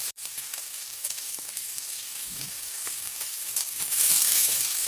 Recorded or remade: remade